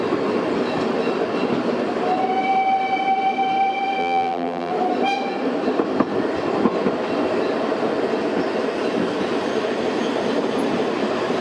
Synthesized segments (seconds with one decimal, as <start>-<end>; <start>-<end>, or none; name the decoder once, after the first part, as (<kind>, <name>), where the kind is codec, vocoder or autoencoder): 4.0-4.7 (vocoder, BigVGAN v2)